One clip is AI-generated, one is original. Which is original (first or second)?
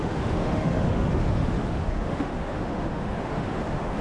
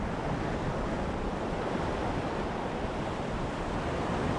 second